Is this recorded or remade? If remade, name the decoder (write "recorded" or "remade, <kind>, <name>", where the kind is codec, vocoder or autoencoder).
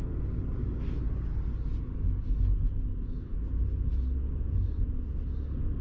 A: recorded